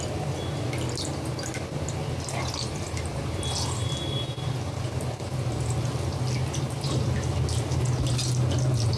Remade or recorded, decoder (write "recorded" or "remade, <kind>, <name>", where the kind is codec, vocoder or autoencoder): recorded